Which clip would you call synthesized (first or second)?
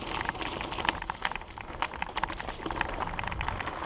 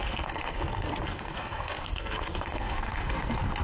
second